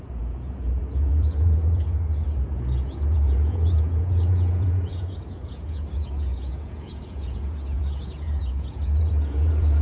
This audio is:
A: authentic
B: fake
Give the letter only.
B